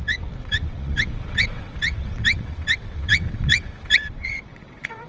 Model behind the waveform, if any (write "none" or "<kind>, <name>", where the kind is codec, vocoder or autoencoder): vocoder, WaveNeXt